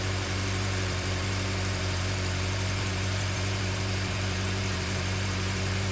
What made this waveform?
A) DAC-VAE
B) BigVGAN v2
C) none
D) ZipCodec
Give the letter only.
B